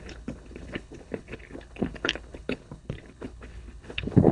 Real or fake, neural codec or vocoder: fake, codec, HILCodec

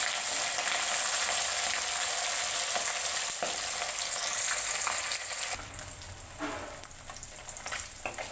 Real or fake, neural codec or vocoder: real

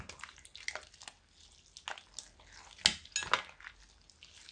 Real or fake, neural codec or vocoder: real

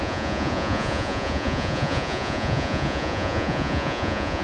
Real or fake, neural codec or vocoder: fake, vocoder, Vocos